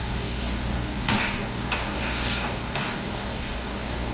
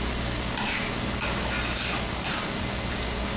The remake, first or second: first